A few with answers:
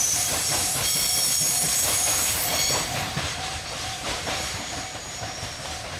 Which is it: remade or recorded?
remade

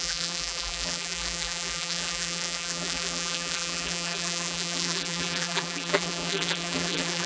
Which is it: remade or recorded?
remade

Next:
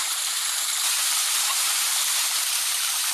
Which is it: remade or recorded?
remade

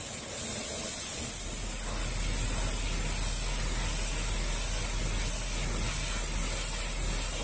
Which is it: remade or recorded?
recorded